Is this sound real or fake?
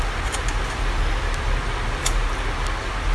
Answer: real